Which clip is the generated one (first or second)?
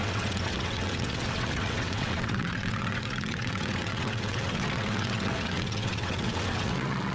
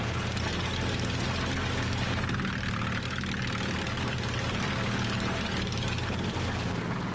first